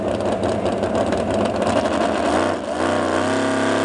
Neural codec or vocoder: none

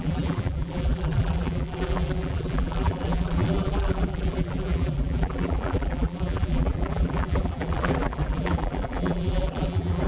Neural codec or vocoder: vocoder, BigVGAN v2